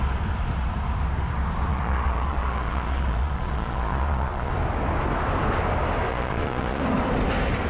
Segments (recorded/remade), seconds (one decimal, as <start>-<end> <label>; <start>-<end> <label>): 0.0-1.7 recorded; 1.7-4.5 remade; 4.5-6.1 recorded; 6.1-6.8 remade; 6.8-7.7 recorded